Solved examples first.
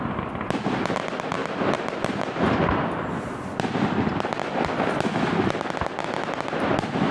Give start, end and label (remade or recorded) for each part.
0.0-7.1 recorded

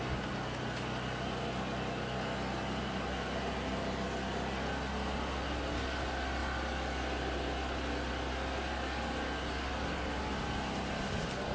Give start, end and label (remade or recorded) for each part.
0.0-11.5 recorded

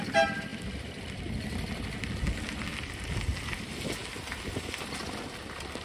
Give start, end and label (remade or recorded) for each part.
0.0-3.3 remade; 3.3-4.0 recorded; 4.0-5.8 remade

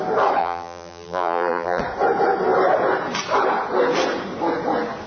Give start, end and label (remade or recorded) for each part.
0.0-0.4 recorded; 0.4-1.8 remade; 1.8-5.1 recorded

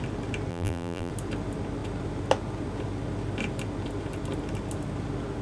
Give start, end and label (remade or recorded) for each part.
0.0-0.5 recorded; 0.5-1.1 remade; 1.1-5.4 recorded

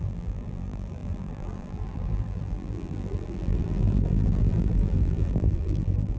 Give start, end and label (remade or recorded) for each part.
0.0-6.2 remade

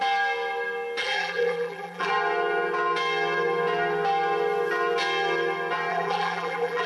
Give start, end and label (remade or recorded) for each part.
0.0-1.0 recorded; 1.0-2.1 remade; 2.1-5.9 recorded; 5.9-6.9 remade